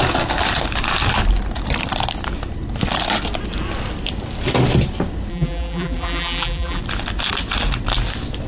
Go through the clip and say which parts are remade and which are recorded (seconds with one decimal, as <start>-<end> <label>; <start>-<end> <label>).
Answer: 0.0-5.3 recorded; 5.3-6.8 remade; 6.8-8.5 recorded